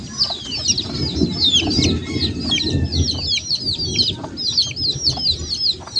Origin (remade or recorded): recorded